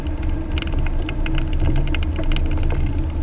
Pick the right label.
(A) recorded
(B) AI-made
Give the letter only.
A